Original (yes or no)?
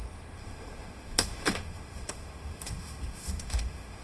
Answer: no